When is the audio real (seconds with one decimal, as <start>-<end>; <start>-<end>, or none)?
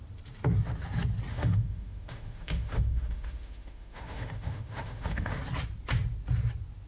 0.0-1.3; 5.4-6.9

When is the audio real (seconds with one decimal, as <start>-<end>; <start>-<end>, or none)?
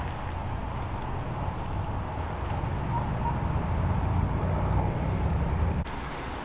0.0-6.4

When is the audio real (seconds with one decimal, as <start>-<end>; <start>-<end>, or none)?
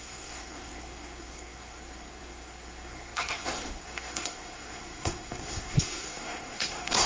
none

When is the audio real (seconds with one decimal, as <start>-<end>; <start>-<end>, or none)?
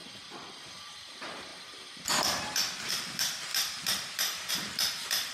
0.0-0.6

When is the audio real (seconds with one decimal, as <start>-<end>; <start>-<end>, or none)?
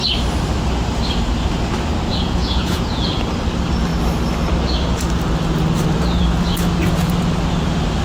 0.0-2.1; 3.0-8.0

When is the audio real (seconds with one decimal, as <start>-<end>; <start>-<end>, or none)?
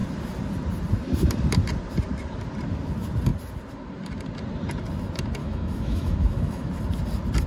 0.0-5.4; 6.7-7.5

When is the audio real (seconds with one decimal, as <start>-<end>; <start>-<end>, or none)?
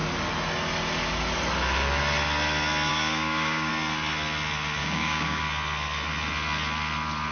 0.0-2.9; 3.7-4.8; 5.4-7.3